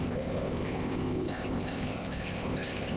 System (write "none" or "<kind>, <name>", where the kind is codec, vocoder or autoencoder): codec, ZipCodec